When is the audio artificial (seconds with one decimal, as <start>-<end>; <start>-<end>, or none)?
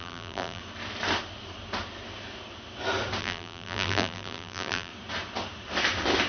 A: 0.0-0.6; 3.2-4.9